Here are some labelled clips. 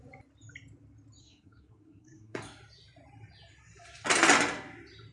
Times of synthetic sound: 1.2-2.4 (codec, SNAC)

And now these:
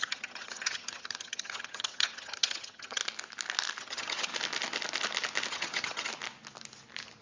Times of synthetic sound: 0.0-3.0 (vocoder, HiFi-GAN); 3.8-4.3; 5.5-6.1

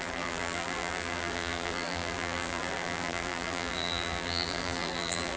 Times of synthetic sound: 0.0-5.4 (vocoder, BigVGAN v2)